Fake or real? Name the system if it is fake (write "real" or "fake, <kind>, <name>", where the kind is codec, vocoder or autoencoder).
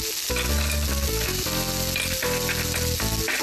real